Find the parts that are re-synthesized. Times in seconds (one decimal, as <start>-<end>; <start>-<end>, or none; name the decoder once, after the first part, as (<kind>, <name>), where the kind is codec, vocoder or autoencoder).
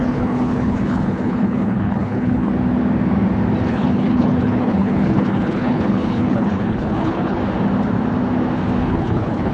0.0-2.5 (codec, HILCodec); 3.7-7.4; 8.8-9.5